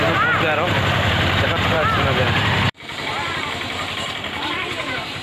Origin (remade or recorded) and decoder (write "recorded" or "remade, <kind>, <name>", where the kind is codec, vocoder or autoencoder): remade, vocoder, BigVGAN v2